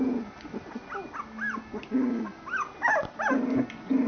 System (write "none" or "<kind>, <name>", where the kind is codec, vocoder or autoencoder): none